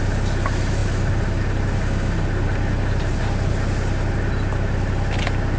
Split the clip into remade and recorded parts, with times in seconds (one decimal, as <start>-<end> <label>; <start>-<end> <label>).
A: 0.0-5.6 recorded